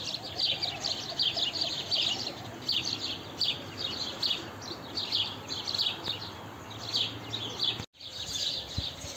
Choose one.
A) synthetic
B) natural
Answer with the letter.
B